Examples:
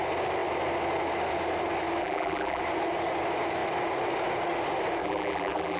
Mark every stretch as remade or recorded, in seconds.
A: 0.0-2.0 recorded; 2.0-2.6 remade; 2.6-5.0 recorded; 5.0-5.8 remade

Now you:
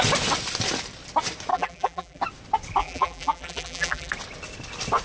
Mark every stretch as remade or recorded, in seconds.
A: 0.0-1.5 recorded; 1.5-2.2 remade; 2.2-2.8 recorded; 2.8-4.1 remade; 4.1-5.0 recorded

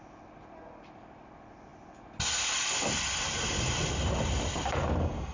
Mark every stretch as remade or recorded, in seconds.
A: 0.0-5.3 recorded

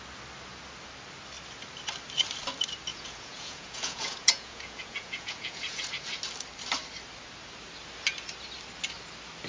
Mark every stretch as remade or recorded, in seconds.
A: 0.0-2.9 recorded; 2.9-5.8 remade; 5.8-9.5 recorded

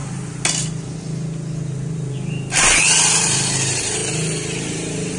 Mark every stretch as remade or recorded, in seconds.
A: 0.0-3.1 recorded; 3.1-4.0 remade; 4.0-4.7 recorded; 4.7-5.2 remade